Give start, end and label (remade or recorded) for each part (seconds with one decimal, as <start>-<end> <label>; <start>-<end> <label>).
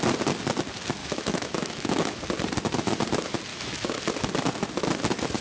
0.0-1.0 recorded; 1.0-2.2 remade; 2.2-3.5 recorded; 3.5-4.0 remade; 4.0-5.4 recorded